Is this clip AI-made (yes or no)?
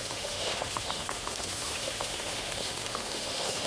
yes